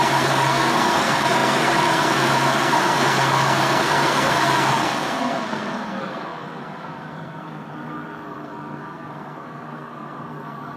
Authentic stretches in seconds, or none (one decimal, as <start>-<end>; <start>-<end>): none